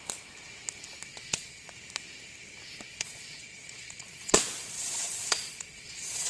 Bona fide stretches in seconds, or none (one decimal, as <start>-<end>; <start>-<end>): 0.0-1.1; 1.7-2.9